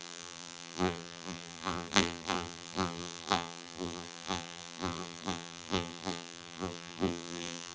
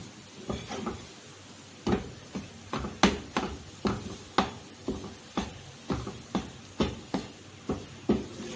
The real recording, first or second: second